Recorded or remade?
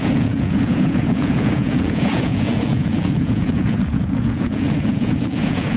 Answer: remade